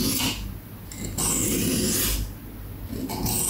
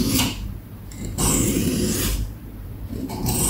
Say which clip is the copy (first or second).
second